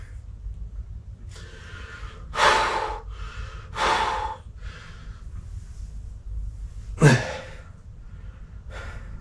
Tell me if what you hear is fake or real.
real